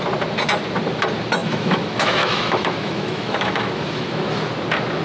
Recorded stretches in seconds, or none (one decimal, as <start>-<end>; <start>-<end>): 0.0-1.4; 4.4-5.0